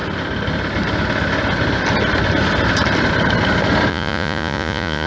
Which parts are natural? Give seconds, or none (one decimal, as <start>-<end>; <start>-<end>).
0.0-3.9